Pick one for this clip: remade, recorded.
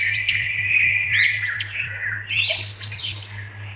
recorded